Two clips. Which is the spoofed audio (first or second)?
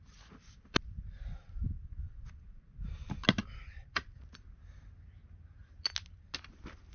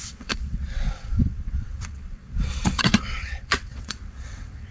second